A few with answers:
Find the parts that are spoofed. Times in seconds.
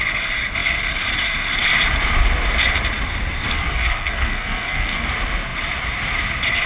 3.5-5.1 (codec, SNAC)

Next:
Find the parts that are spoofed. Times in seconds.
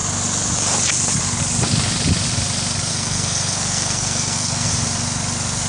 2.9-4.7 (codec, SNAC)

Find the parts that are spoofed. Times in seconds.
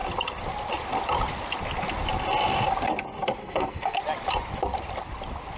3.4-4.0 (codec, SNAC)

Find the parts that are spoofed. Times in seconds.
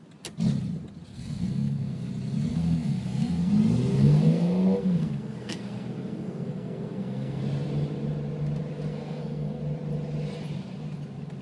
1.1-2.1 (codec, SNAC); 2.5-3.5; 3.9-7.4; 8.9-9.6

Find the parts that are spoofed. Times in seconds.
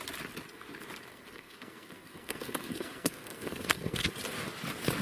1.1-4.1 (codec, SNAC)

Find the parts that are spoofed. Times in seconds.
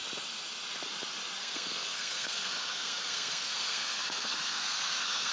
1.4-5.3 (codec, SNAC)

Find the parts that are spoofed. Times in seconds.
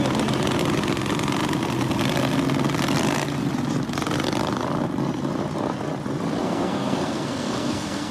6.4-8.1 (codec, SNAC)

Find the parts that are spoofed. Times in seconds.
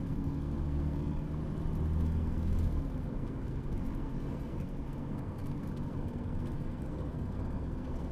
0.0-1.4 (codec, SNAC); 2.0-8.1